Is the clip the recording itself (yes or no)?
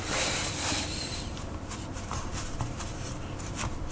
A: no